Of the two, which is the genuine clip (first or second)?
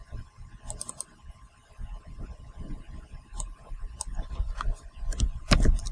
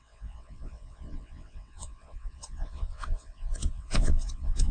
first